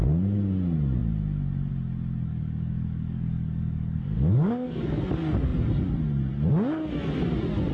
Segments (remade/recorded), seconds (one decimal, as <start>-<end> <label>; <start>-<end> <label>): 0.0-2.3 recorded; 2.3-5.0 remade; 5.0-7.7 recorded